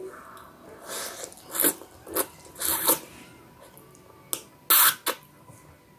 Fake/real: real